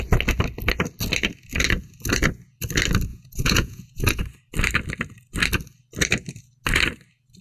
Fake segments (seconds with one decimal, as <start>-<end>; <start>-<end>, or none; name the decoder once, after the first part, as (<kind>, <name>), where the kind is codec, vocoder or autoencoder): 3.1-4.2 (vocoder, Vocos)